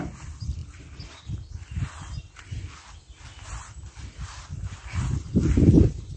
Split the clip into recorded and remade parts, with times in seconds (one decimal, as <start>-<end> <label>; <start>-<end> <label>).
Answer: 0.0-6.2 recorded